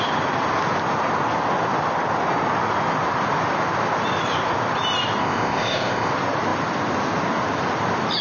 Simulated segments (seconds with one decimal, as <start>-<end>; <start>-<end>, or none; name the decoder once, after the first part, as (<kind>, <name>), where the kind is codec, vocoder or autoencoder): 5.2-6.1 (codec, ZipCodec)